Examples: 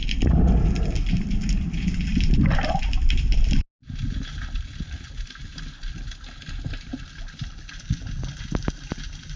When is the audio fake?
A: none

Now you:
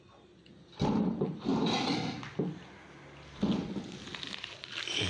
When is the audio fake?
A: none

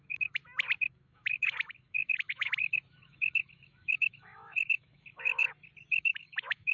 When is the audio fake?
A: 0.0-0.4 (autoencoder, DAC-VAE); 0.9-5.4; 5.9-6.7

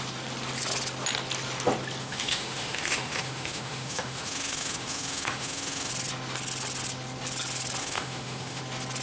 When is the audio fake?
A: 2.0-5.9 (autoencoder, DAC-VAE); 7.8-8.6

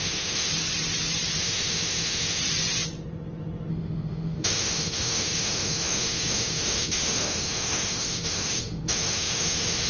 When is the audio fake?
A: 0.0-0.5 (autoencoder, DAC-VAE); 1.4-2.4; 3.7-9.9

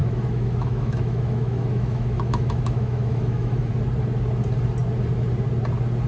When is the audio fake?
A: 0.0-3.7 (autoencoder, DAC-VAE)